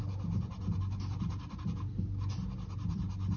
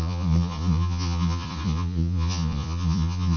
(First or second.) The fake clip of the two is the second